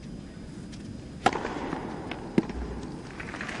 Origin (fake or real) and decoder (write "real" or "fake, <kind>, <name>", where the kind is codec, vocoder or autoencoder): real